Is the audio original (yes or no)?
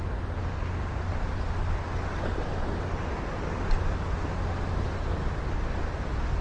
yes